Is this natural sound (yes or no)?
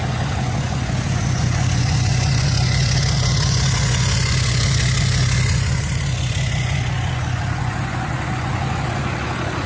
no